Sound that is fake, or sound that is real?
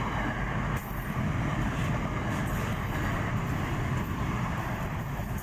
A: real